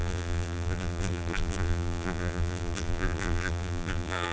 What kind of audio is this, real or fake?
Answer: fake